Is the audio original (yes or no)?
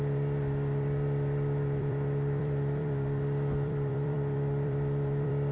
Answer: no